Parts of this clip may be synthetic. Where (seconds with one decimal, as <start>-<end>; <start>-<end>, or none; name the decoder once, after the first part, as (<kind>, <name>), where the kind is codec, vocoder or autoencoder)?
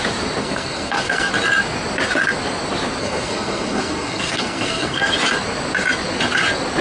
0.4-1.3 (codec, SNAC); 3.0-5.1